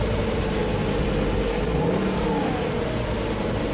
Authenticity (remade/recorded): recorded